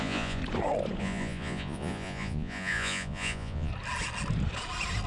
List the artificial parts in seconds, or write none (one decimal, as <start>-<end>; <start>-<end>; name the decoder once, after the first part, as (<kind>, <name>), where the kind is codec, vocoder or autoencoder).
0.0-0.4 (vocoder, Vocos); 1.0-3.7